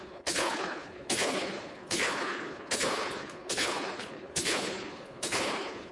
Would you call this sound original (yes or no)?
no